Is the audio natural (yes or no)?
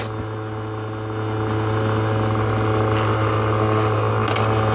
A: yes